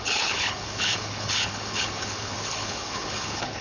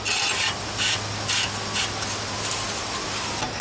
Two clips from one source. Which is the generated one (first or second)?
first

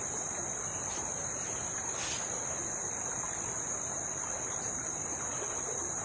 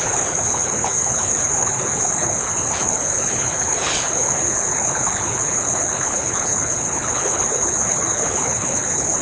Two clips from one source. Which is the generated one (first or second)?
second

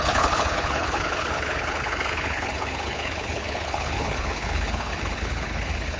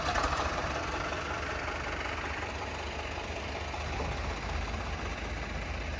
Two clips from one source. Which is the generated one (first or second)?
first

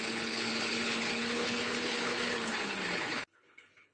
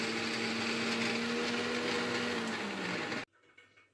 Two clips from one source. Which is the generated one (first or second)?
first